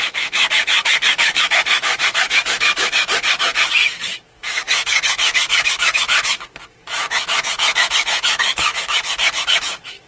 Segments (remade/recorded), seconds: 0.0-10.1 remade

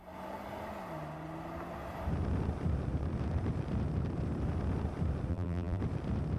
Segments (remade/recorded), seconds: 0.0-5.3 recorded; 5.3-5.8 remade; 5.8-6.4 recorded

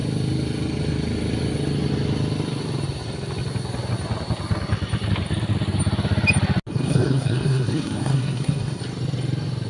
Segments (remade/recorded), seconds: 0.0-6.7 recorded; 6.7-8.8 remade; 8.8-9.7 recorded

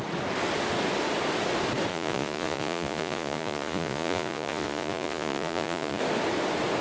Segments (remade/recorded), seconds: 0.0-1.9 recorded; 1.9-6.0 remade; 6.0-6.8 recorded

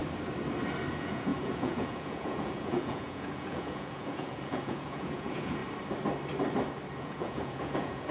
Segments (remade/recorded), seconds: 0.0-0.9 recorded; 0.9-5.6 remade; 5.6-7.0 recorded; 7.0-8.1 remade